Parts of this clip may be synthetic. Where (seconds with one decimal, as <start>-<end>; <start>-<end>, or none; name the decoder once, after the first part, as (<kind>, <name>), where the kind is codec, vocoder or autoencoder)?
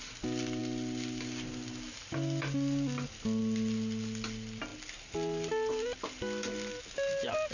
none